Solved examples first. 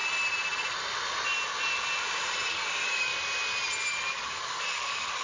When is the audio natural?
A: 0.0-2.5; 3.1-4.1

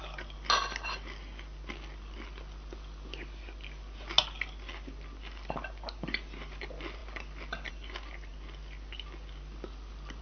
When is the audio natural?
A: 0.0-10.2

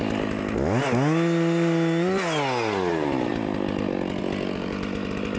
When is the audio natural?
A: 0.0-5.4

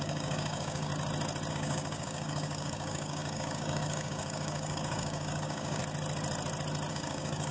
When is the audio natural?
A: 0.9-1.5; 5.8-6.9